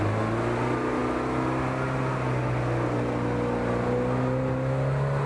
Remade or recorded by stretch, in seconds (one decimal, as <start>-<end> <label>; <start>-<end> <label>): 0.0-5.3 recorded